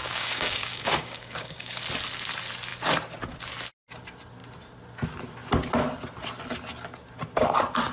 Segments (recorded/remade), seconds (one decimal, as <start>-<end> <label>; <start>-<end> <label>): 0.0-1.8 remade; 1.8-7.9 recorded